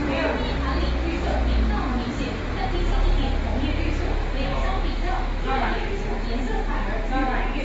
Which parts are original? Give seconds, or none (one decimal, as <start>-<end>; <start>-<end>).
0.0-4.5; 5.9-7.6